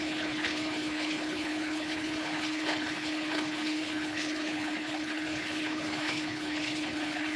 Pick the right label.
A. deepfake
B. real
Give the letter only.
A